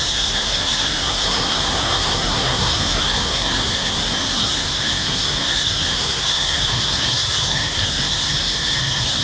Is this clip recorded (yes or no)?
no